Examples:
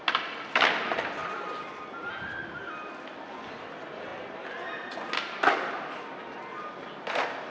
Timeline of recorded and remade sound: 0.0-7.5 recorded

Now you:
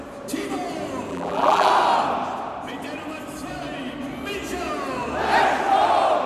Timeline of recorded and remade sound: 0.0-1.1 recorded; 1.1-1.7 remade; 1.7-6.3 recorded

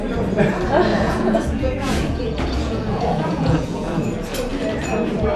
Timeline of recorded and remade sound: 0.0-0.9 recorded; 0.9-4.1 remade; 4.1-5.4 recorded

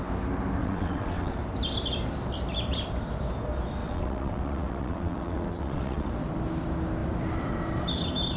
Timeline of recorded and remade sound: 0.0-0.6 recorded; 0.6-1.3 remade; 1.3-3.8 recorded; 3.8-6.1 remade; 6.1-8.4 recorded

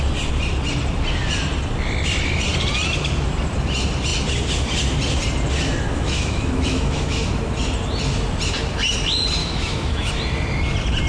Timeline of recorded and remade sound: 0.0-5.9 recorded; 5.9-7.3 remade; 7.3-9.4 recorded; 9.4-10.1 remade; 10.1-11.1 recorded

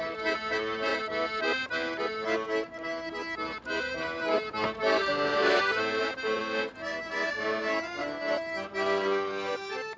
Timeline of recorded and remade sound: 0.0-0.9 remade; 0.9-2.0 recorded; 2.0-6.4 remade; 6.4-8.0 recorded; 8.0-10.0 remade